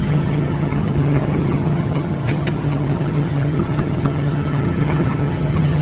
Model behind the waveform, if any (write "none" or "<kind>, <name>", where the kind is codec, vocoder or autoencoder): vocoder, HiFi-GAN